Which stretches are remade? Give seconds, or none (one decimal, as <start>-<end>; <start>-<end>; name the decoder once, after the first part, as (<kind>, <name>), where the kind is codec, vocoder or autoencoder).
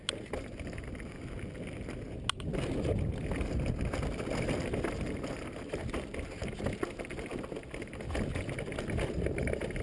none